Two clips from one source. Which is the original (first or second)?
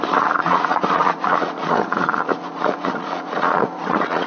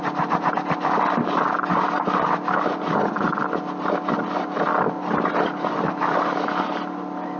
second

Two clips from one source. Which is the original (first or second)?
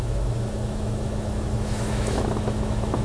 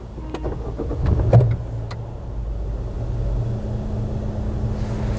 second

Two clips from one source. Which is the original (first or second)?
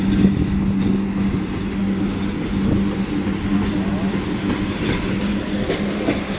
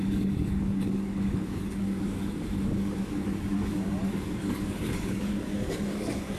first